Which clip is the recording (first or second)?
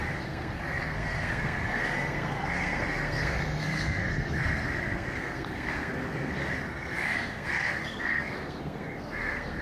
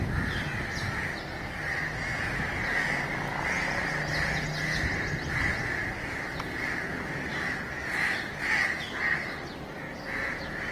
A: second